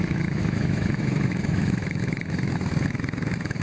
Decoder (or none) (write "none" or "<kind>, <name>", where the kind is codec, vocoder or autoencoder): autoencoder, DAC-VAE